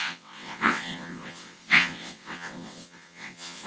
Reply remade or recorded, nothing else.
remade